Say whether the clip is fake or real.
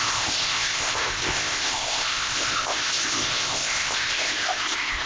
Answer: fake